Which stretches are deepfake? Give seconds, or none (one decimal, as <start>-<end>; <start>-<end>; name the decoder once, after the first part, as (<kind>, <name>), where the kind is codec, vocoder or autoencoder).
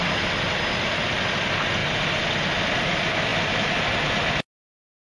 none